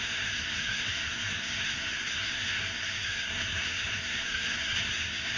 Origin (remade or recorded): remade